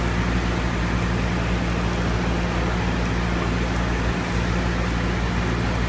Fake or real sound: real